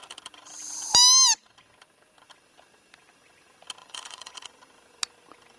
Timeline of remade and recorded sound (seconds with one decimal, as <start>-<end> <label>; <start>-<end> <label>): 0.0-3.8 recorded; 3.8-4.5 remade; 4.5-5.6 recorded